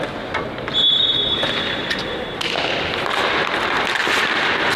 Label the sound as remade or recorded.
recorded